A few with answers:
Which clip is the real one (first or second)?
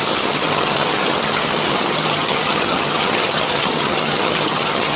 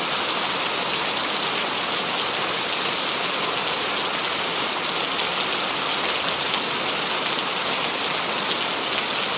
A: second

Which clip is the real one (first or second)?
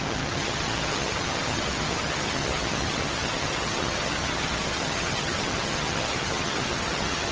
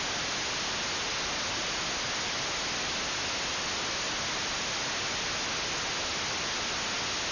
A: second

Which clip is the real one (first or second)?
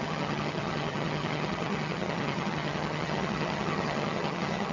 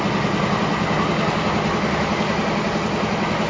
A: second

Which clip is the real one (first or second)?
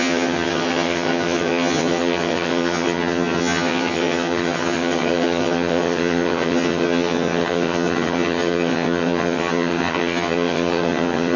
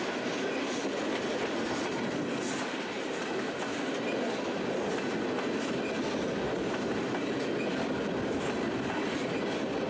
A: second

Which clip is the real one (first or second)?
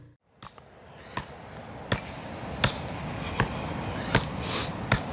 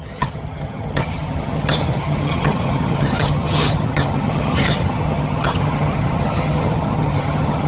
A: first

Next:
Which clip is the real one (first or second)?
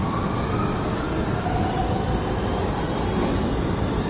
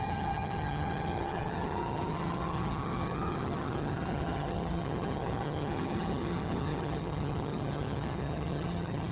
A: first